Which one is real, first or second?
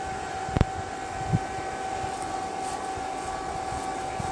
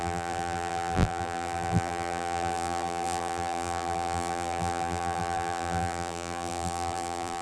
first